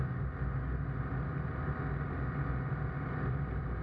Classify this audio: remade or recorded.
recorded